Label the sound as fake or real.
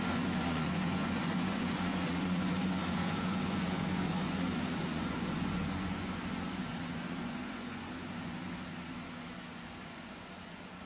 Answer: fake